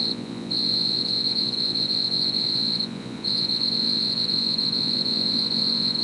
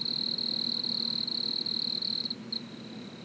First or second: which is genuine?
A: second